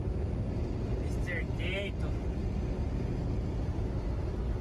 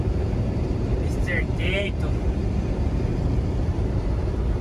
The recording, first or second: first